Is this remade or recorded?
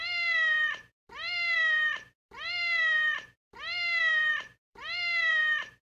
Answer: remade